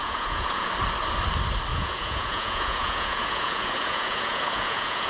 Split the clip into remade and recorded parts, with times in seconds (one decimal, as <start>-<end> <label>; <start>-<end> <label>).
0.0-0.7 remade; 0.7-1.7 recorded; 1.7-5.1 remade